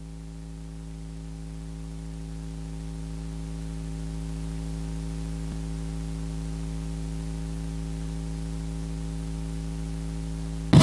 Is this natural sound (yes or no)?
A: yes